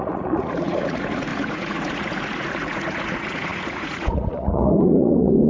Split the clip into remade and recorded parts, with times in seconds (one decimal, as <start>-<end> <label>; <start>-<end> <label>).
0.0-5.5 remade